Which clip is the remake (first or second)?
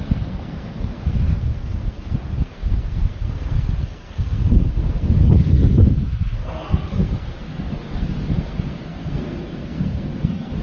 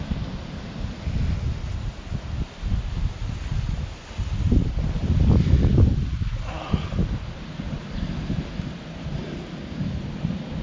first